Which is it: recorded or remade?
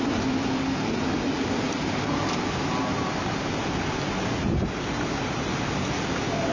recorded